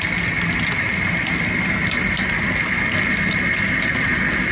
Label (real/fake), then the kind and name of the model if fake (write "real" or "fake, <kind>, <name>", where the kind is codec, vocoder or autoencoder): real